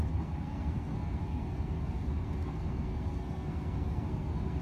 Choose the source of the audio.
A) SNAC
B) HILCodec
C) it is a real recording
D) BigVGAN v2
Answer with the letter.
A